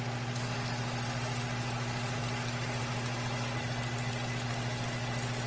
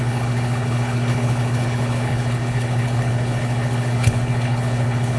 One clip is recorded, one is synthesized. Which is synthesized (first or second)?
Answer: second